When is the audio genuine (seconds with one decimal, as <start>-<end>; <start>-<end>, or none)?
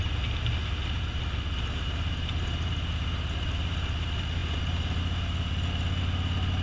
0.0-6.6